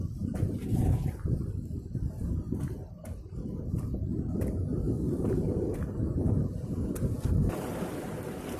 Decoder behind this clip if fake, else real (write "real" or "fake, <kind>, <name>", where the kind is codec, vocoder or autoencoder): real